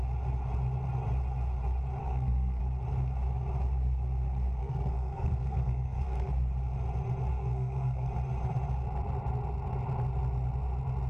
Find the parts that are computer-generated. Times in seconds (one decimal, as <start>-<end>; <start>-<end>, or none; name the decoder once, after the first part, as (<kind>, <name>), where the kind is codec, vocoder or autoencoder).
2.0-2.6 (codec, SNAC); 4.6-6.3; 7.3-8.1